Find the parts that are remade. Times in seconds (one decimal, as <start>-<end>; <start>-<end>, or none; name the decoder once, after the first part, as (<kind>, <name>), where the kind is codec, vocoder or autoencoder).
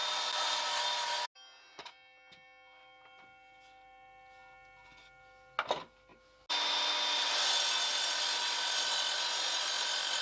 none